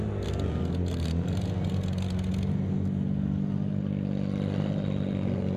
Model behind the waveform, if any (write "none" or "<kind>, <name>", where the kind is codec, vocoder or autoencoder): none